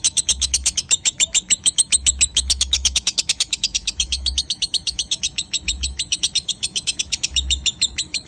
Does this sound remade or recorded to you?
remade